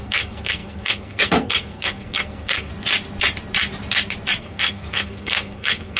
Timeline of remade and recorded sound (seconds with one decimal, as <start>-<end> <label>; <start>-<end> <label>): 0.0-2.7 remade; 2.7-4.4 recorded; 4.4-6.0 remade